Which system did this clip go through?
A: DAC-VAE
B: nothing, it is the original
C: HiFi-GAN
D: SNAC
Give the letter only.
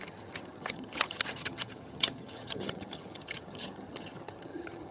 C